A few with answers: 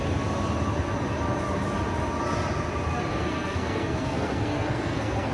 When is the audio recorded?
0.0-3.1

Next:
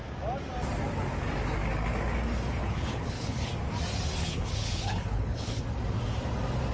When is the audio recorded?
0.0-2.6; 3.5-4.2; 5.6-6.7

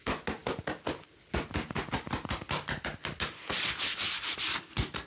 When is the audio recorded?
0.0-5.1

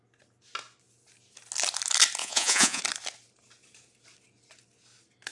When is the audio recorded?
0.0-2.2; 2.8-5.3

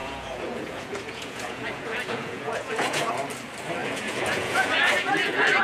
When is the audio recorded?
3.1-3.8

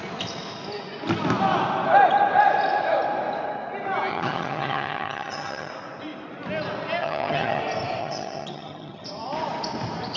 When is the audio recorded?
0.0-4.1; 5.7-7.0; 7.6-8.0; 9.0-10.2

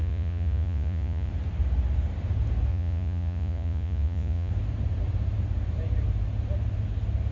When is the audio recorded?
1.3-2.7; 4.5-7.3